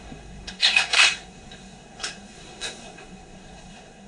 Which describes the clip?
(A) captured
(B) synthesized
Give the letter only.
B